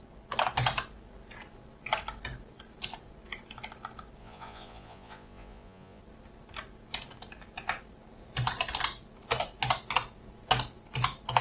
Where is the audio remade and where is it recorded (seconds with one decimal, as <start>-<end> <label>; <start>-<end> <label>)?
0.0-4.2 recorded; 4.2-6.0 remade; 6.0-11.4 recorded